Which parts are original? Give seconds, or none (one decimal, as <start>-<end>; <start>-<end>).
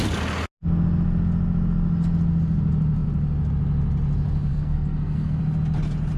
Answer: 0.0-4.5; 5.4-6.2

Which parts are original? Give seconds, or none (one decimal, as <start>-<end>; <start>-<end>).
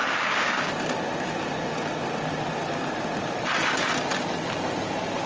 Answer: 0.7-5.3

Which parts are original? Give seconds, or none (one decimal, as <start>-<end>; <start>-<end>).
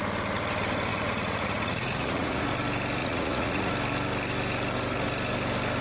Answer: 0.0-0.9; 2.4-3.0; 3.7-5.8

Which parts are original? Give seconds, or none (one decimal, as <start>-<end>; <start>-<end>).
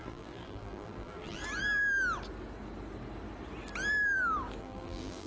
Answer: 1.4-4.6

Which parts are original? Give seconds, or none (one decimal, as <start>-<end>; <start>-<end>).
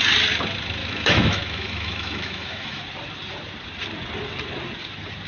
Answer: 0.0-0.8; 2.8-5.3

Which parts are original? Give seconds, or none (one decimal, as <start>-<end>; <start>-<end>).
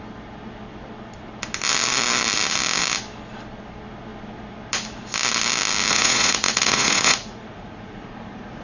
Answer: 0.0-5.9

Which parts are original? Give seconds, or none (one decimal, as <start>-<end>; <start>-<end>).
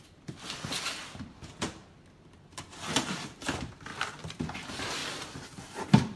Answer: 0.0-3.9; 4.4-6.2